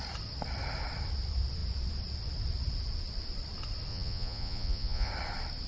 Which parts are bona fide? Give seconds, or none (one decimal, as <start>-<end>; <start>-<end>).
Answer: 0.0-3.9; 5.1-5.7